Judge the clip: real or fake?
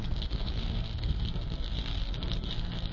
fake